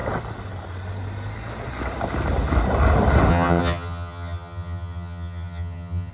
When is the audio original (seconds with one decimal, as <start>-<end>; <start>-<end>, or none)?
0.0-3.3